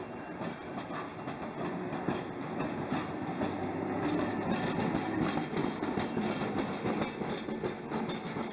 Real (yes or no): yes